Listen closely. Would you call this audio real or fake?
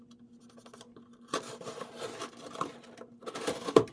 real